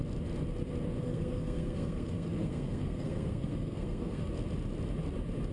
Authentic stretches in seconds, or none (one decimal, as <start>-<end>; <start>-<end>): 0.0-1.0; 4.3-5.5

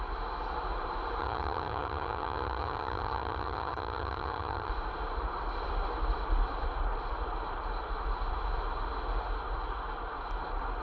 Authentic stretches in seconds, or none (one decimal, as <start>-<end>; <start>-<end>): 0.0-1.2; 4.7-10.8